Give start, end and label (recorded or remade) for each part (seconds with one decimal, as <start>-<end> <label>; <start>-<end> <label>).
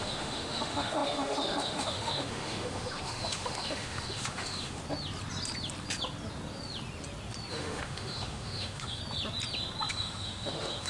0.0-4.8 remade; 4.8-7.5 recorded; 7.5-9.0 remade; 9.0-9.9 recorded; 9.9-10.9 remade